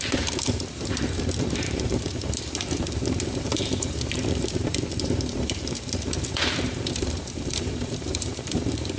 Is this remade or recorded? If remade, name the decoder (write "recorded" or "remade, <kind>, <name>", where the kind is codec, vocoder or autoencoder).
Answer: remade, vocoder, BigVGAN v2